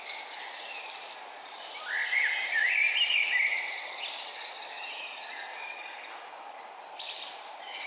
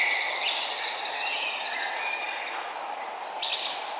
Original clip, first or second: second